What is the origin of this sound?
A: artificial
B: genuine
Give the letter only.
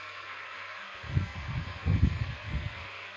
A